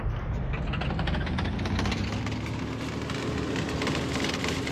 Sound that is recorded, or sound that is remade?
recorded